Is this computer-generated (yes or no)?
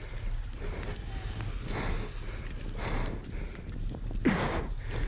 no